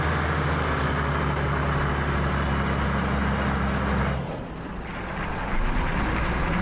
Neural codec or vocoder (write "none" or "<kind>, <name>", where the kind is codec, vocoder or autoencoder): none